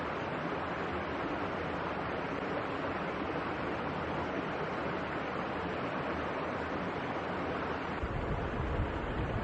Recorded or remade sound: recorded